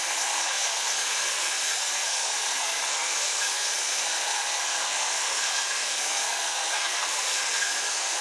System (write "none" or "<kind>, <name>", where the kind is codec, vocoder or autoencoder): codec, SNAC